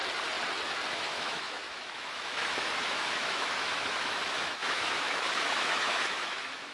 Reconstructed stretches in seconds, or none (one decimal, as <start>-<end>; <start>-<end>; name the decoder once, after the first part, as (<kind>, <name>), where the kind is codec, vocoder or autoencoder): 0.9-6.7 (autoencoder, DAC-VAE)